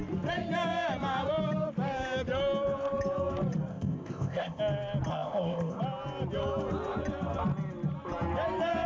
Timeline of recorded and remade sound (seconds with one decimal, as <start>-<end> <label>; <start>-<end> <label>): 0.0-3.7 recorded; 3.7-4.6 remade; 4.6-5.1 recorded; 5.1-5.8 remade; 5.8-8.9 recorded